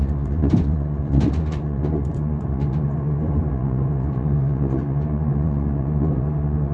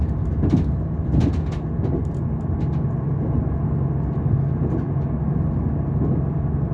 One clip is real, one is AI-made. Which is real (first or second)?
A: second